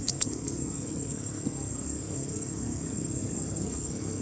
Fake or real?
fake